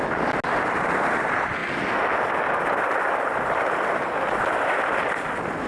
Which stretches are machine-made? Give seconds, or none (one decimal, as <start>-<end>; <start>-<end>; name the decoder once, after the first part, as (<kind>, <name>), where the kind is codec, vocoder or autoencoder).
none